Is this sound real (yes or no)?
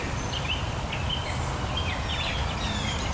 yes